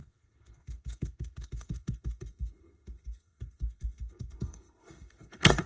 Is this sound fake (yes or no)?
yes